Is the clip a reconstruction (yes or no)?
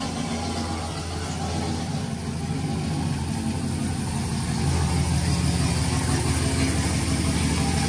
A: no